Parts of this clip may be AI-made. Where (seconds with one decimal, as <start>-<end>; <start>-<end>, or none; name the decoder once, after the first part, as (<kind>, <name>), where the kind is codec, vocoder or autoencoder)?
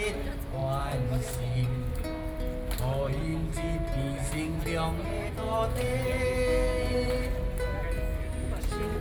none